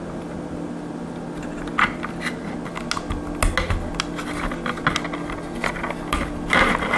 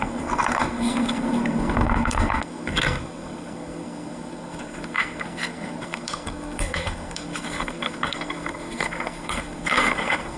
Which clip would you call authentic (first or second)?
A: first